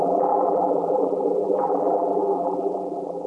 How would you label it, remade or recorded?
remade